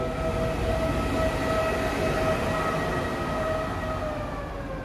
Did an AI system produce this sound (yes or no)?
no